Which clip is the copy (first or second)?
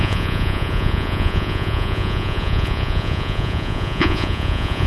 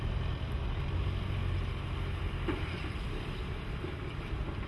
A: first